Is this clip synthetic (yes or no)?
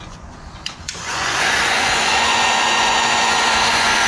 yes